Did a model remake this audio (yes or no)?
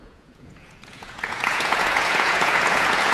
yes